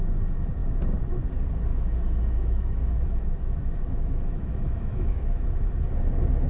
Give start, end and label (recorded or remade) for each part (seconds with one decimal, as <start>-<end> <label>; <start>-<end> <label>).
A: 0.0-0.6 recorded; 0.6-1.2 remade; 1.2-1.7 recorded; 1.7-5.6 remade; 5.6-6.5 recorded